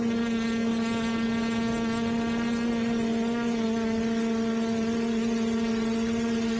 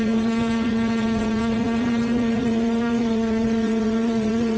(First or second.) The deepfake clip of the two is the second